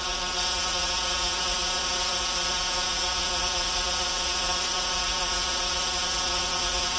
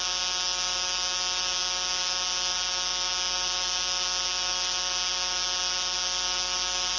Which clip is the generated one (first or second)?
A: first